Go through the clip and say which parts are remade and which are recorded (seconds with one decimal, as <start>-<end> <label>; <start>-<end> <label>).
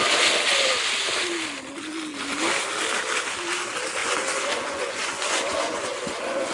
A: 0.0-4.0 recorded; 4.0-6.5 remade